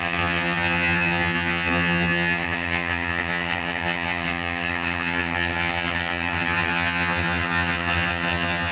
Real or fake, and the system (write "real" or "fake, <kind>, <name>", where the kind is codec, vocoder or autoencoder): fake, vocoder, HiFi-GAN